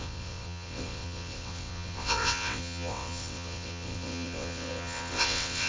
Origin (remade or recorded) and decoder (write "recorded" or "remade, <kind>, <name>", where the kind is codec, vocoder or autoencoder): remade, vocoder, WaveNeXt